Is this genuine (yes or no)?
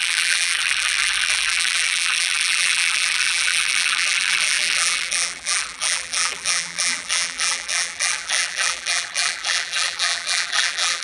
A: no